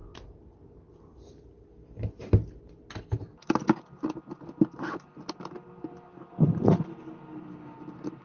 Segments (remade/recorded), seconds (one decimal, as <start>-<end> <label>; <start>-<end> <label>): 0.0-8.2 recorded

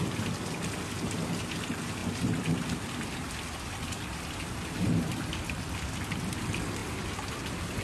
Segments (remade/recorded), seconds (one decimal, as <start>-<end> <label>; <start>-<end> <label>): 0.0-7.8 remade